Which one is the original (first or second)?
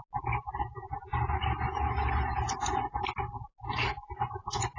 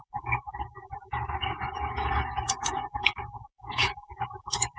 first